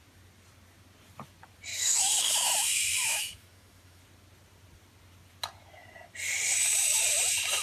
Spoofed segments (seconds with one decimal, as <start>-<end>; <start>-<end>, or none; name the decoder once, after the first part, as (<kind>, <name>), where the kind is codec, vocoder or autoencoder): 1.7-4.0 (autoencoder, DAC-VAE)